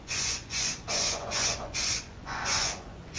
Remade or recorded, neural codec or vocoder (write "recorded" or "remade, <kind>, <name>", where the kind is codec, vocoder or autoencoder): remade, vocoder, Vocos